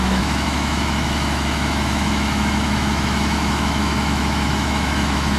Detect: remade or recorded remade